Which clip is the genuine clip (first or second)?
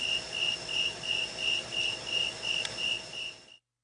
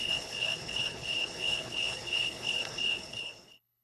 first